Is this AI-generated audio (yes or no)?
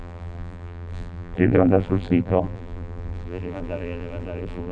yes